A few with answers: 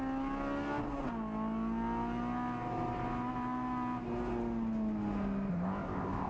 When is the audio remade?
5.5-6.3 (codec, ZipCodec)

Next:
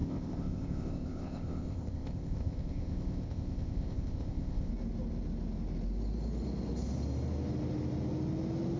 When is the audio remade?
0.0-4.7 (codec, ZipCodec)

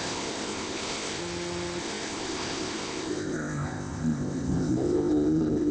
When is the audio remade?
0.0-1.2 (codec, ZipCodec); 1.8-5.7